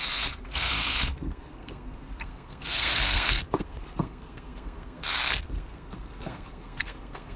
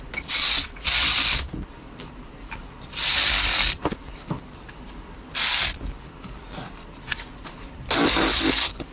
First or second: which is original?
second